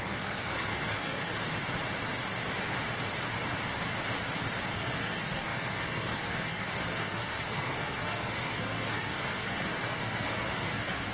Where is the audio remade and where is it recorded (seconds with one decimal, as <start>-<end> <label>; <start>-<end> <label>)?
0.0-1.3 remade; 1.3-4.6 recorded; 4.6-11.1 remade